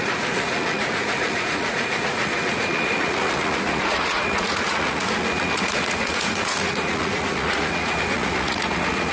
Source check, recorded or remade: remade